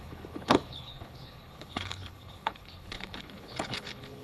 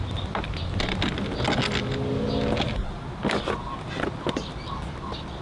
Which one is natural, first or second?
second